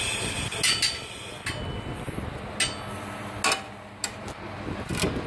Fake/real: real